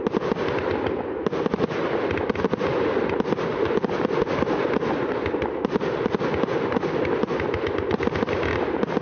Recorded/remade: recorded